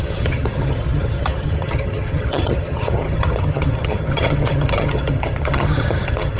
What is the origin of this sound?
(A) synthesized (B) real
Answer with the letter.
A